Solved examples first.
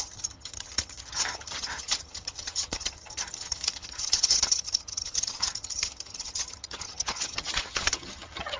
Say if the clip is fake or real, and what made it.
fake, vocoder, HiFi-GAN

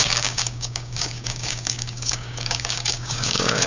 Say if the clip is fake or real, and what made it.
fake, codec, DAC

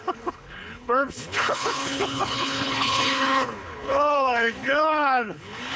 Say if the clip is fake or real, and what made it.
fake, codec, HILCodec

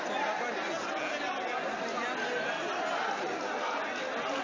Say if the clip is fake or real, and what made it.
real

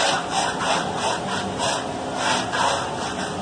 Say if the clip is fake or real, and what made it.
real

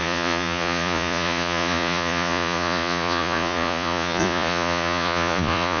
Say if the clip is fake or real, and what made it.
fake, vocoder, Vocos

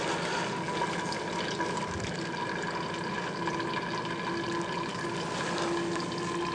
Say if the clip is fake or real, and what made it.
real